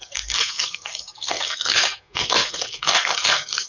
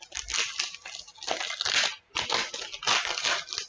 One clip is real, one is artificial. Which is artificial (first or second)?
first